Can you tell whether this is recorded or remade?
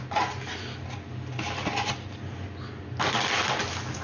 recorded